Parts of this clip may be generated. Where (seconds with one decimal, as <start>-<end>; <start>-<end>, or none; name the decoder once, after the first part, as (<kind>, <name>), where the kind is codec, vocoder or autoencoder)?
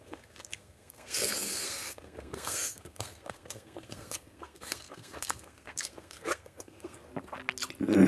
0.0-7.1 (codec, SNAC)